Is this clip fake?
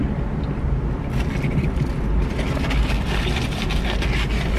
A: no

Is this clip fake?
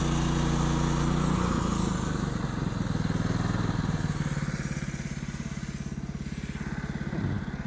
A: no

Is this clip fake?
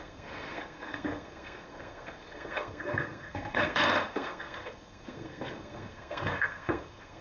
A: yes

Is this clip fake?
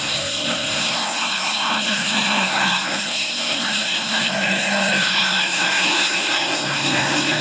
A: yes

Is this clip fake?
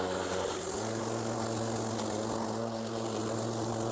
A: no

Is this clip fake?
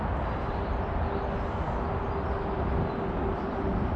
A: no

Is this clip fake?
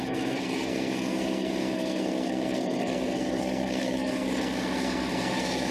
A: yes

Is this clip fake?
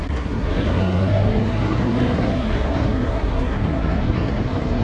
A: yes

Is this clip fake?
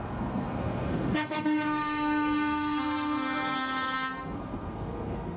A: yes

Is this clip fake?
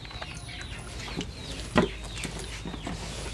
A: no